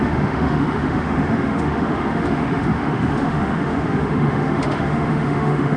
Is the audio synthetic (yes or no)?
yes